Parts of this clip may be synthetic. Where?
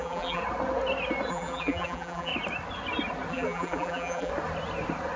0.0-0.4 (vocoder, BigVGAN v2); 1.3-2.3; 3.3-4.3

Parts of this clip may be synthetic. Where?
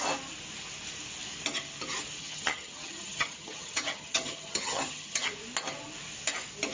2.2-5.3 (vocoder, HiFi-GAN)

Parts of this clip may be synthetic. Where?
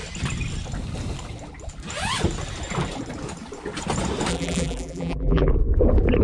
4.3-5.5 (vocoder, BigVGAN v2)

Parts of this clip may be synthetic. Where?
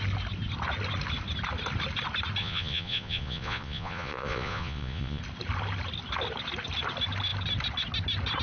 2.4-5.2 (vocoder, Vocos)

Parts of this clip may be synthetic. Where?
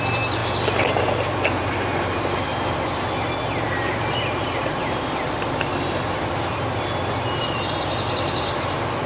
none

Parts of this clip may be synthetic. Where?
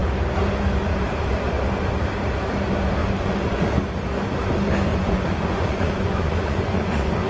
3.0-3.7 (vocoder, Vocos); 4.9-7.3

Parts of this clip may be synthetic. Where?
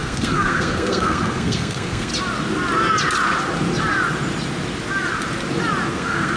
0.0-2.1 (codec, SNAC); 5.9-6.4